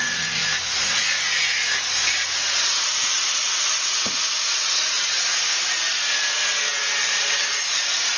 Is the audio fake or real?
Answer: fake